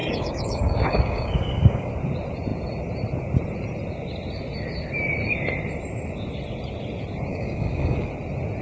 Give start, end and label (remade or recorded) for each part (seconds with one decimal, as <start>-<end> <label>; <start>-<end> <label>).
0.0-1.9 remade; 1.9-7.3 recorded; 7.3-8.1 remade; 8.1-8.6 recorded